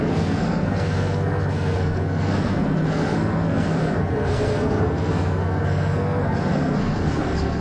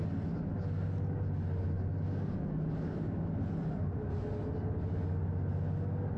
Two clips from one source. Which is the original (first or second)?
second